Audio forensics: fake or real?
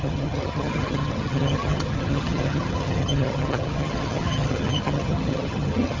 fake